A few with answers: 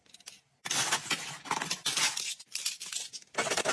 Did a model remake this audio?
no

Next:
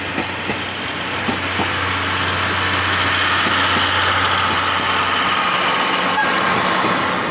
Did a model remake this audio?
no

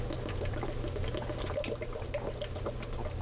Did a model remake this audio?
no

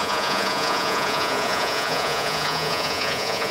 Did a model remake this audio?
yes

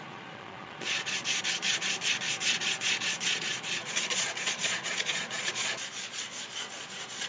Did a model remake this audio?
yes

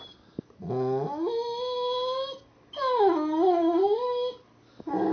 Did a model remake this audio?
no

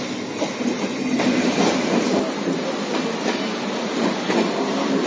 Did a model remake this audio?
no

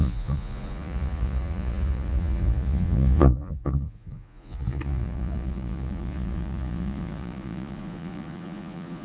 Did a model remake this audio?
yes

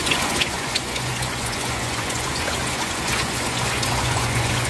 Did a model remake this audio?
yes